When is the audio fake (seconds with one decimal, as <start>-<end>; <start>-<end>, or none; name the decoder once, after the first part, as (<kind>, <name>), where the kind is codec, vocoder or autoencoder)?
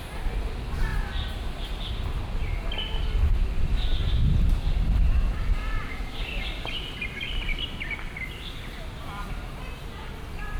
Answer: none